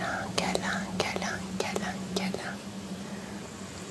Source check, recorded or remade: recorded